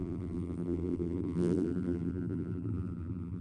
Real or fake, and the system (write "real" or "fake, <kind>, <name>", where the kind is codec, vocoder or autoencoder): fake, vocoder, BigVGAN v2